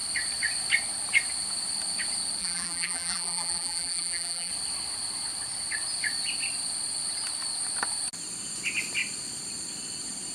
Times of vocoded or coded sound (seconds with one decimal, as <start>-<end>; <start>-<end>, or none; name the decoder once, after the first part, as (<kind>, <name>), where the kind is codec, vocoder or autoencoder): 2.4-4.5 (vocoder, BigVGAN v2)